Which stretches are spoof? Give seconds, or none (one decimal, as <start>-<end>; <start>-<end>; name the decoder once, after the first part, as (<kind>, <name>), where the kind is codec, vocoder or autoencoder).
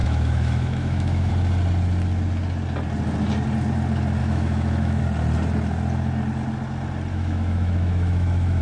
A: 0.0-1.3 (autoencoder, DAC-VAE); 4.2-5.0; 7.1-8.6